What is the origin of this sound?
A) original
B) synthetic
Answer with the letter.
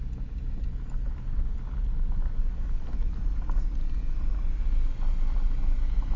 A